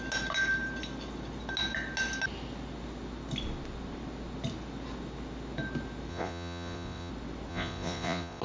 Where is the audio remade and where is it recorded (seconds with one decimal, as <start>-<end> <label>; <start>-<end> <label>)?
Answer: 0.0-6.1 recorded; 6.1-7.1 remade; 7.1-7.5 recorded; 7.5-8.4 remade